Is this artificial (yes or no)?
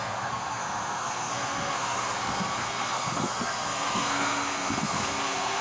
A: yes